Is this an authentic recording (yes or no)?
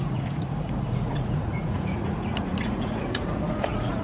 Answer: no